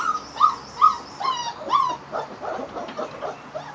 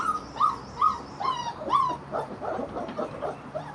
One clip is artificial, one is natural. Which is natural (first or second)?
first